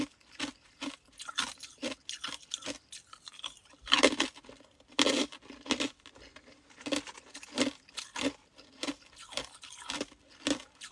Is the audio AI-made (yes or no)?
no